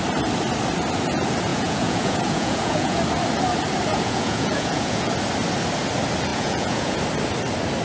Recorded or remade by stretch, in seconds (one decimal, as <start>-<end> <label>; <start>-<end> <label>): 0.0-1.5 recorded; 1.5-3.0 remade; 3.0-3.9 recorded; 3.9-5.1 remade; 5.1-6.3 recorded; 6.3-7.0 remade; 7.0-7.8 recorded

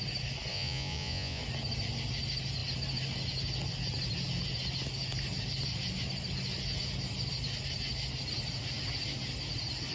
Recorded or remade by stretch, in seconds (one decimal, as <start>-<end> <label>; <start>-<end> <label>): 0.0-0.5 recorded; 0.5-1.4 remade; 1.4-9.9 recorded

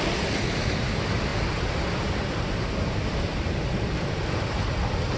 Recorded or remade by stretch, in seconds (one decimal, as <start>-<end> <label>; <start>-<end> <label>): 0.0-5.2 recorded

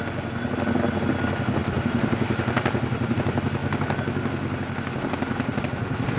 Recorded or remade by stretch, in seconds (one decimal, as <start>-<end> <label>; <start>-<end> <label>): 0.0-6.2 recorded

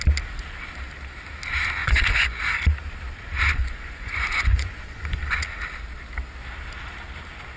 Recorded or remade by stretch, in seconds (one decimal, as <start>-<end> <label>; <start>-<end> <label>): 0.0-1.8 recorded; 1.8-2.4 remade; 2.4-3.6 recorded; 3.6-5.2 remade; 5.2-7.6 recorded

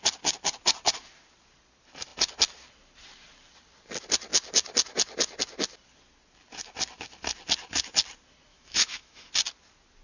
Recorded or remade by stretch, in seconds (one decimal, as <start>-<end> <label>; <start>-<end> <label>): 0.0-8.5 recorded; 8.5-9.3 remade; 9.3-10.0 recorded

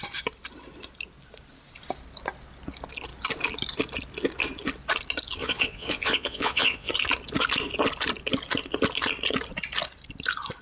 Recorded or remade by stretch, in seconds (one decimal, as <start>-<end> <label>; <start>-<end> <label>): 0.0-5.4 recorded; 5.4-6.9 remade; 6.9-10.6 recorded

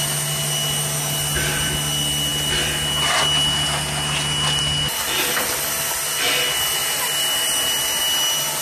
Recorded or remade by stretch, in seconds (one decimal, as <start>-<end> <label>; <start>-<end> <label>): 0.0-8.6 recorded